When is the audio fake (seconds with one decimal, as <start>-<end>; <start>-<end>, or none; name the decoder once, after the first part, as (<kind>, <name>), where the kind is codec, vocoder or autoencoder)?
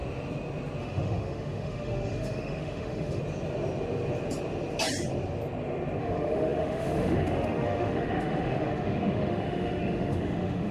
0.8-3.2 (autoencoder, DAC-VAE); 6.0-10.7